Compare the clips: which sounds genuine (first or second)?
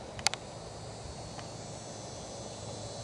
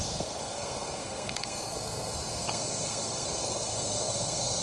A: first